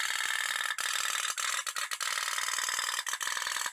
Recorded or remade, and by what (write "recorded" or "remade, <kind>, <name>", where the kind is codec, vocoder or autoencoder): recorded